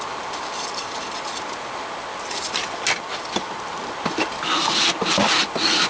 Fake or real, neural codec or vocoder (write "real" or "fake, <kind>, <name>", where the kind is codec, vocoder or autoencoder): real